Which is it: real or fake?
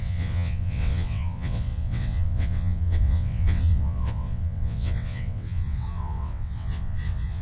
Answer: fake